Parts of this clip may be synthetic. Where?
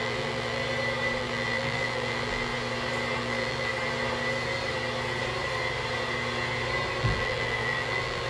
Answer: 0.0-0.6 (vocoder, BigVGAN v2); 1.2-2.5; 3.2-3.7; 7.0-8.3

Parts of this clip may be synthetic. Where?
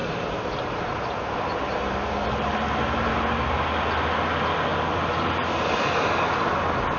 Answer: 0.0-3.1 (vocoder, BigVGAN v2)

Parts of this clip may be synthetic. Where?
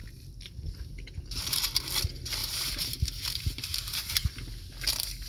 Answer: 0.0-0.9 (vocoder, BigVGAN v2); 2.4-4.2